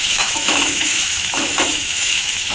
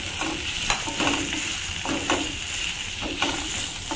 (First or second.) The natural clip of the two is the second